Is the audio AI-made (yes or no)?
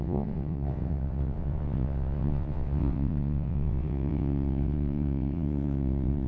yes